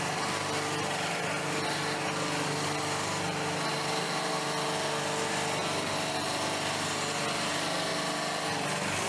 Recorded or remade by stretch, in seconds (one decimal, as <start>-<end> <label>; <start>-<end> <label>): 0.0-9.1 recorded